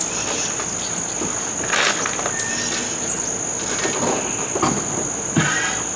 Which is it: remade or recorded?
recorded